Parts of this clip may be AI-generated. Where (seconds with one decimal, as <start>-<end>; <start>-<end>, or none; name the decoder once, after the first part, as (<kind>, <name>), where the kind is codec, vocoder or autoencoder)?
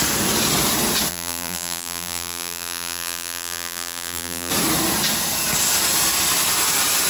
1.1-4.5 (vocoder, BigVGAN v2)